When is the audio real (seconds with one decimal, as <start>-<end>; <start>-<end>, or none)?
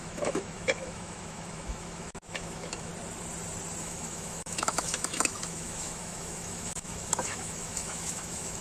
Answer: 2.9-3.8